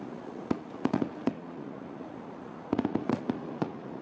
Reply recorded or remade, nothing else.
remade